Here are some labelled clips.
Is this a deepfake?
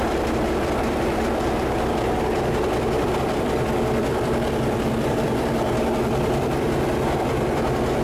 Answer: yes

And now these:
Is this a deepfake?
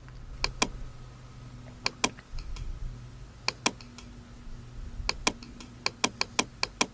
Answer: no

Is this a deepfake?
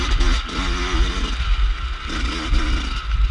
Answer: no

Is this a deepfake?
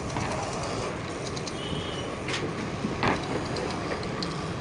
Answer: no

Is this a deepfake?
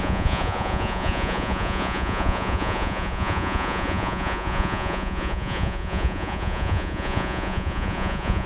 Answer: yes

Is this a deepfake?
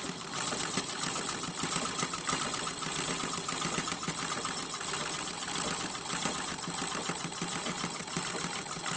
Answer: no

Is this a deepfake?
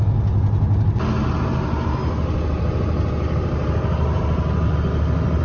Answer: no